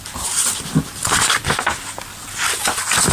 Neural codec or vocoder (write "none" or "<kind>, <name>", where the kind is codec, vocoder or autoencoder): none